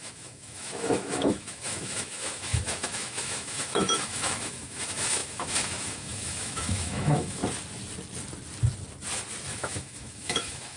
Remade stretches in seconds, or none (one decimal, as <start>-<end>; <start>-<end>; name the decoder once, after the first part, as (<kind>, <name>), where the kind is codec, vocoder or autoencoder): 0.0-7.4 (autoencoder, DAC-VAE); 9.5-10.8

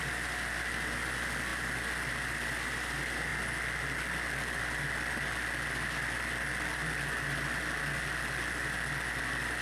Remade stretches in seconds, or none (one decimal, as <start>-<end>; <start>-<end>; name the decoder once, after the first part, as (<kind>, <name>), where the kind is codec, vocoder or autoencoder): none

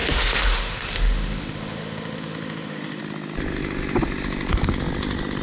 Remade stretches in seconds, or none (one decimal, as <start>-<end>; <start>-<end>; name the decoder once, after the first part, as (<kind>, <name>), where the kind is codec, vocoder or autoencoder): 0.0-3.0 (autoencoder, DAC-VAE)

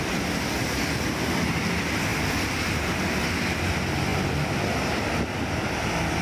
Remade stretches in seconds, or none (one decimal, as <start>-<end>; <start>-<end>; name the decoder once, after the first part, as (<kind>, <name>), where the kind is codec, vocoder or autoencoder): none